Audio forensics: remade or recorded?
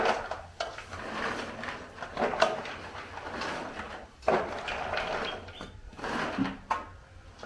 recorded